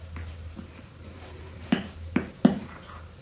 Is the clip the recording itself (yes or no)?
yes